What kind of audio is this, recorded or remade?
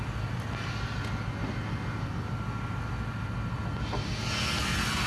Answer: recorded